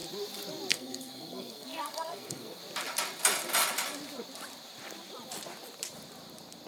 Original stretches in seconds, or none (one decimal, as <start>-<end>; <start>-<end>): 0.0-0.7; 2.6-6.7